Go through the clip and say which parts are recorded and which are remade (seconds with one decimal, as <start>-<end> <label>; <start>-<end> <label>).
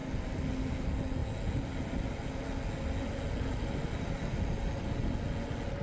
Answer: 0.0-5.8 recorded